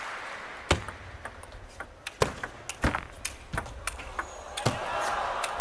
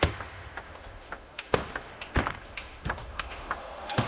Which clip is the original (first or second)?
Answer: first